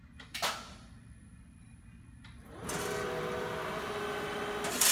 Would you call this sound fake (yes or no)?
no